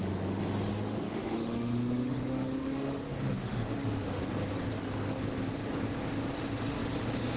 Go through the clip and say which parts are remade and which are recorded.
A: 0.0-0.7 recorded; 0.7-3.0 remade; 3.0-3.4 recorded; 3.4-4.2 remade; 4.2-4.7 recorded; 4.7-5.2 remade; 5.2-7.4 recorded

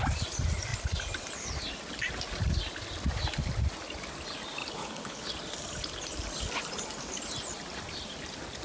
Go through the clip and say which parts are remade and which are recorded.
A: 0.0-4.6 recorded; 4.6-5.3 remade; 5.3-8.6 recorded

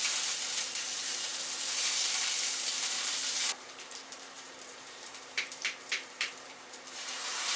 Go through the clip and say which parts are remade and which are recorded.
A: 0.0-1.3 remade; 1.3-2.4 recorded; 2.4-7.6 remade